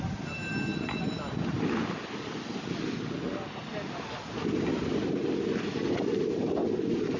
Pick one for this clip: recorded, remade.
recorded